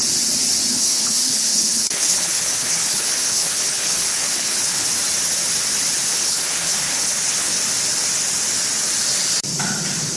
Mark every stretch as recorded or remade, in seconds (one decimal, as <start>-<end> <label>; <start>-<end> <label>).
0.0-0.7 recorded; 0.7-4.9 remade; 4.9-6.1 recorded; 6.1-7.6 remade; 7.6-10.2 recorded